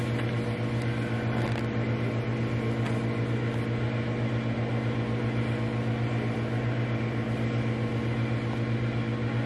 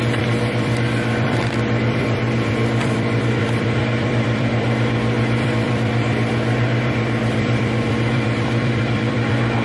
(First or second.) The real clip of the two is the first